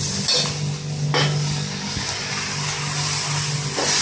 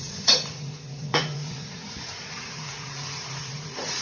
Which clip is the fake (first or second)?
second